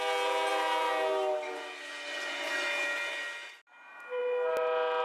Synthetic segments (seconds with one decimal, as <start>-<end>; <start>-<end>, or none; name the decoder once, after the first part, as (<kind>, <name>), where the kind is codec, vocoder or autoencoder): none